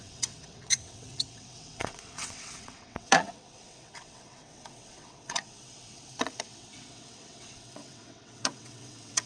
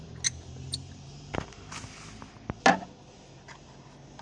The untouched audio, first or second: second